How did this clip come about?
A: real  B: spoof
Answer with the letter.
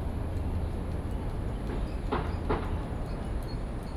A